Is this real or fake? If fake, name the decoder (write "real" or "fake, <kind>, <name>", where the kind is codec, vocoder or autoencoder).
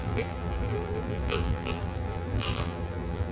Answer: fake, vocoder, BigVGAN v2